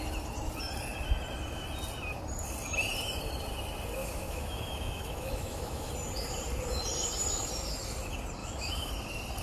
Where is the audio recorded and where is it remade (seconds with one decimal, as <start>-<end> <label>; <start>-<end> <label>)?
0.0-4.0 recorded; 4.0-5.9 remade; 5.9-8.4 recorded; 8.4-8.9 remade; 8.9-9.4 recorded

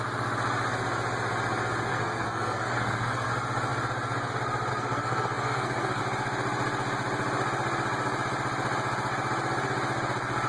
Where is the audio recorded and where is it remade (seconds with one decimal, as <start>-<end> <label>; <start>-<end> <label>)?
0.0-1.9 recorded; 1.9-3.3 remade; 3.3-4.7 recorded; 4.7-6.0 remade; 6.0-10.5 recorded